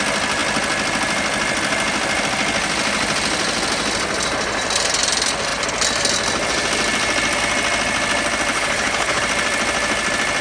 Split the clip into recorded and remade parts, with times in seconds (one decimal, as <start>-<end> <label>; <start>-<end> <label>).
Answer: 0.0-8.5 recorded; 8.5-9.2 remade; 9.2-10.4 recorded